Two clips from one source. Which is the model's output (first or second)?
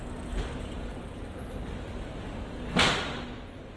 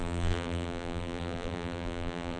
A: second